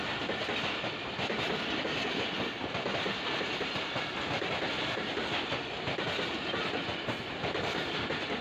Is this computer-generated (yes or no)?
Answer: no